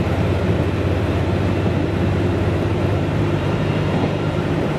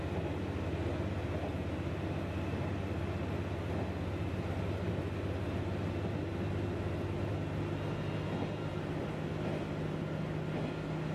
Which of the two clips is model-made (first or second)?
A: first